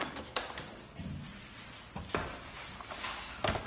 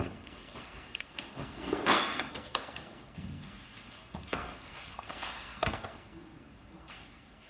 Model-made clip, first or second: second